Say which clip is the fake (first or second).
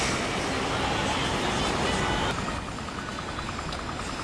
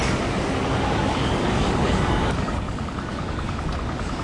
second